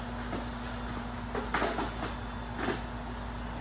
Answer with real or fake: real